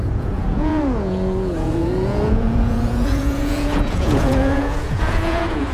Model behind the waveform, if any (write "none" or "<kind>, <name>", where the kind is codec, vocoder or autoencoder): vocoder, Vocos